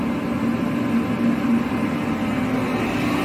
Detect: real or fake real